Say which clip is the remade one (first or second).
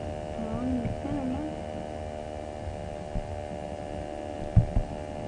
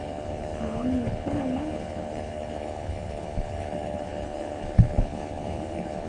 second